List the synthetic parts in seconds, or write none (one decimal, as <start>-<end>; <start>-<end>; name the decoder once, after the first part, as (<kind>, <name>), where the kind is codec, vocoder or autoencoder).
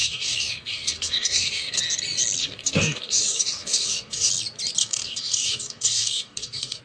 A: 0.0-1.8 (codec, DAC); 2.4-4.3; 4.8-6.8